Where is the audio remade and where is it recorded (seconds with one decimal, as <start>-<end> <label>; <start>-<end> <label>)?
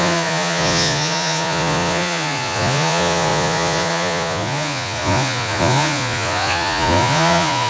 0.0-7.7 remade